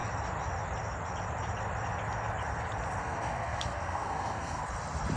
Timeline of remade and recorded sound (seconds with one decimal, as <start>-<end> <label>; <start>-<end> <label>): 0.0-3.0 recorded; 3.0-4.6 remade; 4.6-5.2 recorded